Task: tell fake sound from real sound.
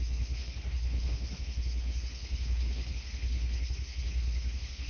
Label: fake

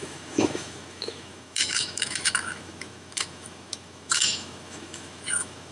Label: fake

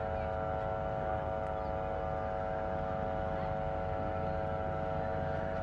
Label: real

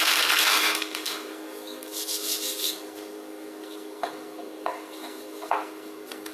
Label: fake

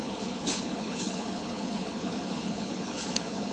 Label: fake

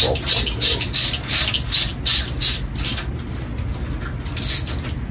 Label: real